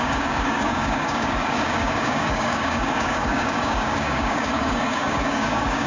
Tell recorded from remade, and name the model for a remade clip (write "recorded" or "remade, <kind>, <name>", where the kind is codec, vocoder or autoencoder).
remade, codec, DAC